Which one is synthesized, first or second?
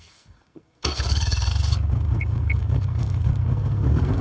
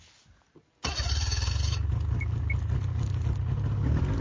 first